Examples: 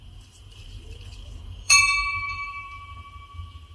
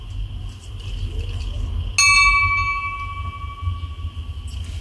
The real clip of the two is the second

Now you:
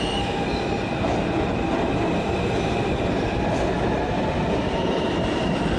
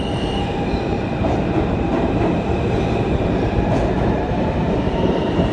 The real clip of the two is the first